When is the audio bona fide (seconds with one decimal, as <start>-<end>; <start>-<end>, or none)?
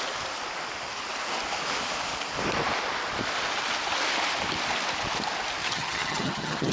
0.0-5.6